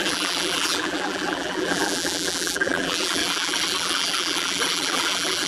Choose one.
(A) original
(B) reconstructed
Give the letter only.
B